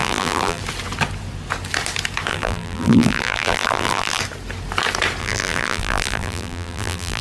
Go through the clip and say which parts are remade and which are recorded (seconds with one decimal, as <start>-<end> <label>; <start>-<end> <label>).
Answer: 0.0-0.6 remade; 0.6-2.3 recorded; 2.3-4.2 remade; 4.2-5.2 recorded; 5.2-7.2 remade